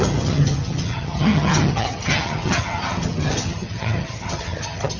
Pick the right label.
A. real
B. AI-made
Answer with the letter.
B